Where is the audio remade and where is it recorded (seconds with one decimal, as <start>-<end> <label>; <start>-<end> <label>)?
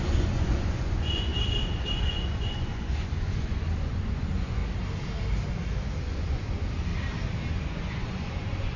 0.0-1.3 remade; 1.3-1.9 recorded; 1.9-4.6 remade; 4.6-6.0 recorded; 6.0-6.9 remade; 6.9-7.5 recorded; 7.5-8.8 remade